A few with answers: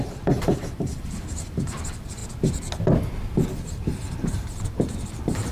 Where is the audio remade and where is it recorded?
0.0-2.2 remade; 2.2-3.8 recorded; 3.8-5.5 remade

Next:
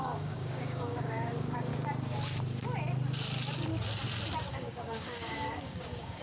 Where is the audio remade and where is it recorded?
0.0-1.7 remade; 1.7-4.5 recorded; 4.5-6.2 remade

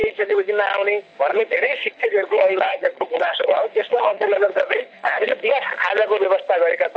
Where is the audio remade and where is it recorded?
0.0-0.5 remade; 0.5-1.3 recorded; 1.3-5.5 remade; 5.5-7.0 recorded

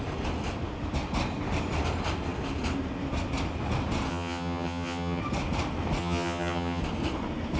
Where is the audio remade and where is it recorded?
0.0-4.1 recorded; 4.1-5.2 remade; 5.2-6.0 recorded; 6.0-6.8 remade; 6.8-7.6 recorded